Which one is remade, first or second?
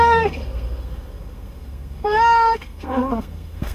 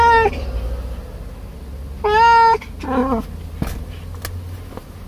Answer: first